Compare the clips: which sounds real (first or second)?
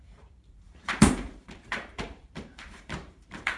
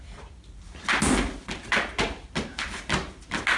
second